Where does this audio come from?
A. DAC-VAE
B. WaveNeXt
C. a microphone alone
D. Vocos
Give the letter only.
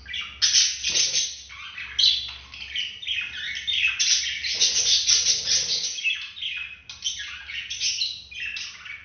C